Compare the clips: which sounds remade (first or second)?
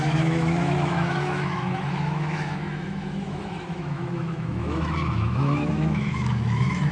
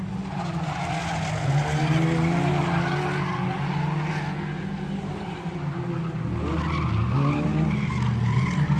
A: first